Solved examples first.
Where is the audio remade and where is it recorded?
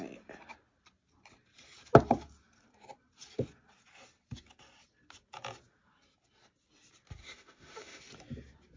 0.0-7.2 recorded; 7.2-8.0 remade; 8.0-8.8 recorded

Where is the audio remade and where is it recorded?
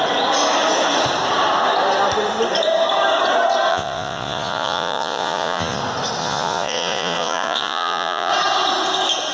0.0-3.7 recorded; 3.7-5.8 remade; 5.8-6.2 recorded; 6.2-8.3 remade; 8.3-9.3 recorded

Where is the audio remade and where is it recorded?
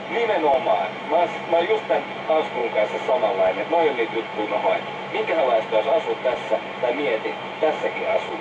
0.0-7.3 recorded; 7.3-8.4 remade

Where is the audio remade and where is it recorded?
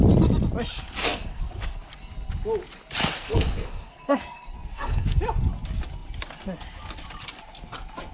0.0-1.0 recorded; 1.0-2.0 remade; 2.0-3.0 recorded; 3.0-5.2 remade; 5.2-8.1 recorded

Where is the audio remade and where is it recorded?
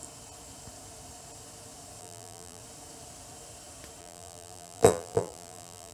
0.0-2.0 recorded; 2.0-2.6 remade; 2.6-4.0 recorded; 4.0-5.9 remade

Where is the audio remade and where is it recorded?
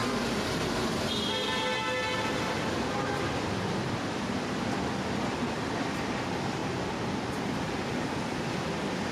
0.0-9.1 recorded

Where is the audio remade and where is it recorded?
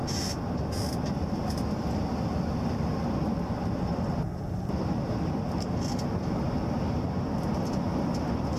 0.0-8.6 recorded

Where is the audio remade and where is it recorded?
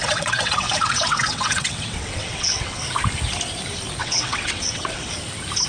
0.0-2.8 remade; 2.8-4.0 recorded; 4.0-5.1 remade; 5.1-5.7 recorded